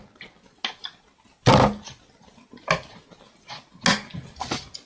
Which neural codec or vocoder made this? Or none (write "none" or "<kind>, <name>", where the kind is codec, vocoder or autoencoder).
none